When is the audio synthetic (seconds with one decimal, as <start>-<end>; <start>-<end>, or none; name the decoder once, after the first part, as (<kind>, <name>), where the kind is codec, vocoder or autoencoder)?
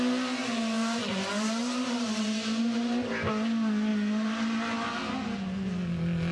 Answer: none